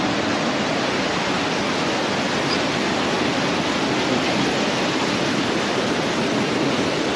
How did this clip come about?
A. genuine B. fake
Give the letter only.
A